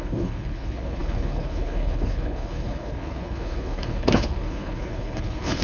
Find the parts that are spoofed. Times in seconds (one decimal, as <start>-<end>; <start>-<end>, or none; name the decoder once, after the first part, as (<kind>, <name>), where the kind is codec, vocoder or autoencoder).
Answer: 0.0-5.6 (codec, HILCodec)